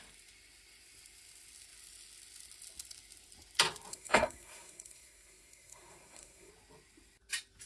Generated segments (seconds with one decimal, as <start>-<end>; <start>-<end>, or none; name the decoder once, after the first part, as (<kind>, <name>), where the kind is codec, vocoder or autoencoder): 3.9-6.5 (codec, SNAC)